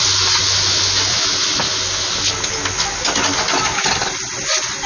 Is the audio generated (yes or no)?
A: no